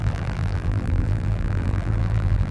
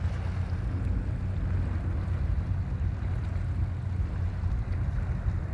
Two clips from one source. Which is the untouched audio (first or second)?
second